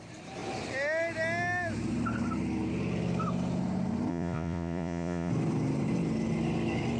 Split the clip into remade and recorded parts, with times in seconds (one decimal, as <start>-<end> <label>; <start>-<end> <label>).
0.0-4.1 recorded; 4.1-5.3 remade; 5.3-7.0 recorded